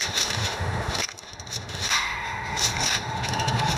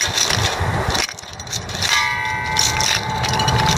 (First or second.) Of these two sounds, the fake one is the first